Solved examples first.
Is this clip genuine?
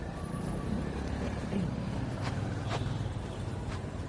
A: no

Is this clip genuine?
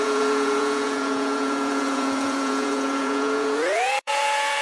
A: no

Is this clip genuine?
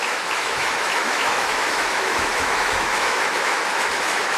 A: no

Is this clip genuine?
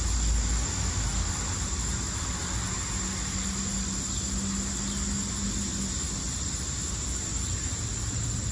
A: yes